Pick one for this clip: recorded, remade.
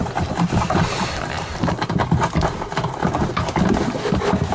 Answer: recorded